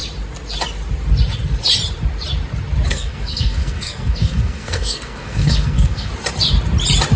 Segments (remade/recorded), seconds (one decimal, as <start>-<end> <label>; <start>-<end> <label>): 0.0-2.9 recorded; 2.9-6.1 remade; 6.1-7.2 recorded